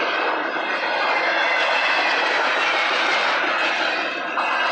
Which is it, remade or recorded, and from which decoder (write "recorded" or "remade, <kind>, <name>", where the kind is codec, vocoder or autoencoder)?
recorded